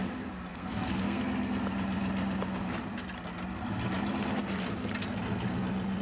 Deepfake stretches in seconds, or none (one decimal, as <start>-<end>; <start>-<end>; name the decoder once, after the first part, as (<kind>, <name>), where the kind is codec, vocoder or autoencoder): 0.5-1.2 (codec, SNAC)